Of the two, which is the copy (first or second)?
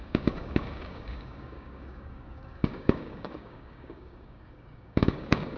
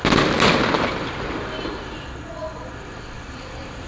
first